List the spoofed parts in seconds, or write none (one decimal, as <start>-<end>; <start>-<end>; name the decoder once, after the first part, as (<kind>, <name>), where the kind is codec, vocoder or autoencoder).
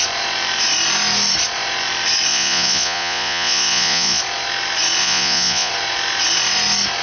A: 2.3-4.2 (vocoder, Vocos); 5.0-5.7